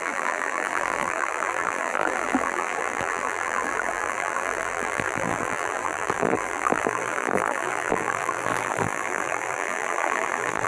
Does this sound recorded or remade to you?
remade